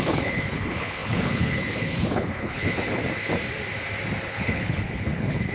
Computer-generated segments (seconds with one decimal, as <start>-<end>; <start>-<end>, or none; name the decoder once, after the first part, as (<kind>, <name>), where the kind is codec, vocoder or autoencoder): 0.0-3.0 (codec, HILCodec); 4.2-5.5

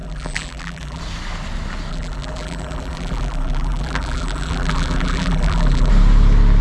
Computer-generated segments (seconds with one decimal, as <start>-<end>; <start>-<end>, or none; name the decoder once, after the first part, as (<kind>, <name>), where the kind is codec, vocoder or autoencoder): 0.0-1.0 (vocoder, BigVGAN v2); 1.9-5.9

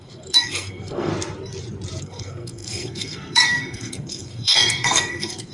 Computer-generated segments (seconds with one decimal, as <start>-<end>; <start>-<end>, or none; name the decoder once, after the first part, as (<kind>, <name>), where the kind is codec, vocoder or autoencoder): 0.0-1.1 (codec, SNAC); 2.0-5.5

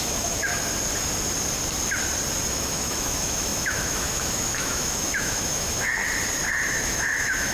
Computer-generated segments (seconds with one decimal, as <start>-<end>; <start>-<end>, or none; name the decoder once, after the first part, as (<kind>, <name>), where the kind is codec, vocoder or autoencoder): 0.0-0.5 (autoencoder, DAC-VAE); 2.5-6.0; 6.7-7.5

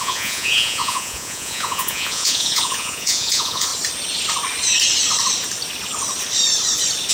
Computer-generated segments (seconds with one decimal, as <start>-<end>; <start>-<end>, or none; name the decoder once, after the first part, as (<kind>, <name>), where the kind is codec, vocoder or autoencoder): 0.0-3.7 (vocoder, Vocos)

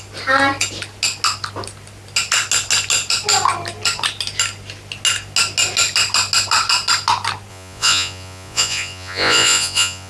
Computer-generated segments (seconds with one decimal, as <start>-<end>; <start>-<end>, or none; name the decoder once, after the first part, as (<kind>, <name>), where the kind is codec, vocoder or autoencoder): 7.5-10.1 (vocoder, Vocos)

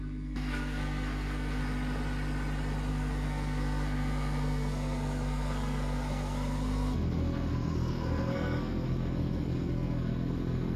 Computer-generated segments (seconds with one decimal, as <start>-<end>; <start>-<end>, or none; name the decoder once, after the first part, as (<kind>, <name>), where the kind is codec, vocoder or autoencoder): 0.0-1.6 (codec, SNAC); 2.9-10.8